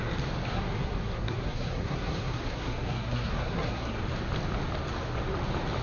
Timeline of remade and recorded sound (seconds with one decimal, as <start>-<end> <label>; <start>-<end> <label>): 0.0-0.5 recorded; 0.5-4.0 remade; 4.0-5.8 recorded

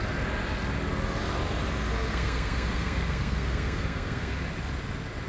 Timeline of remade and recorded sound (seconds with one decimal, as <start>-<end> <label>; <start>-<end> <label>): 0.0-2.1 recorded; 2.1-4.4 remade; 4.4-5.3 recorded